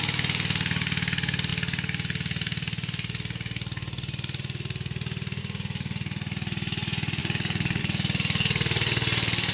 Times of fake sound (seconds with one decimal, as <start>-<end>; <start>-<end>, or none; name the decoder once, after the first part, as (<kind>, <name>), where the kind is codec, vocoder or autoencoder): 7.2-7.8 (codec, DAC)